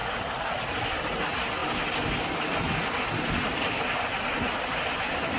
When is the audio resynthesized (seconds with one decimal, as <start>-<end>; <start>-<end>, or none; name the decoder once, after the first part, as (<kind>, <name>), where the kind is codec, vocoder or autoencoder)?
none

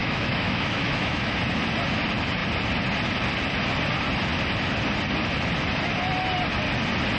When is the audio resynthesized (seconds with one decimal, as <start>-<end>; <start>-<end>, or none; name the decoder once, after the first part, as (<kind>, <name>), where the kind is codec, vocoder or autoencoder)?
0.0-1.4 (autoencoder, DAC-VAE)

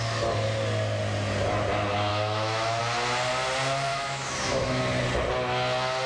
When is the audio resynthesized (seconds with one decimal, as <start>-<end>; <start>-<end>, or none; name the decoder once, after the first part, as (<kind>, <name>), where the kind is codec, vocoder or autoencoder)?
2.1-2.8 (autoencoder, DAC-VAE); 3.9-4.8

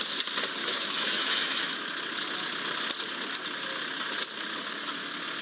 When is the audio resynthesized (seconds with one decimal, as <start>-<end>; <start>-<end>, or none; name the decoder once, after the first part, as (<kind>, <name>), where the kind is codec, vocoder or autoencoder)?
0.6-1.9 (autoencoder, DAC-VAE)

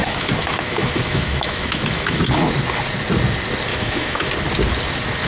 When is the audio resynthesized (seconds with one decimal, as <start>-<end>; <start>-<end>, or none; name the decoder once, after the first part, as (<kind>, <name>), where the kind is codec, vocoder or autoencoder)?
0.0-2.2 (autoencoder, DAC-VAE); 3.7-4.3

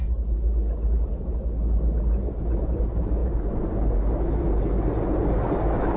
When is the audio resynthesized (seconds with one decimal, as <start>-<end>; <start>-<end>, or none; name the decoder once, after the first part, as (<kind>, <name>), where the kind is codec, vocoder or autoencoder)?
none